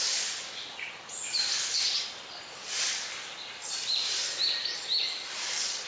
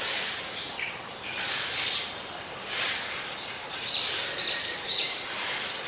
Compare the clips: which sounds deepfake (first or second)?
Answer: second